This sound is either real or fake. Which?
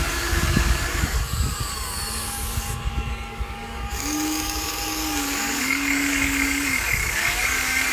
fake